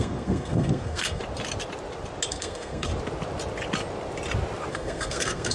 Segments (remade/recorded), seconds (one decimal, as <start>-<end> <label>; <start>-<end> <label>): 0.0-1.2 remade; 1.2-2.3 recorded; 2.3-2.9 remade; 2.9-4.7 recorded; 4.7-5.5 remade